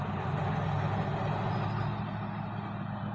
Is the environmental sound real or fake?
real